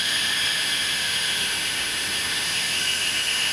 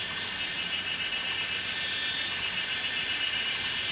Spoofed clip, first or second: first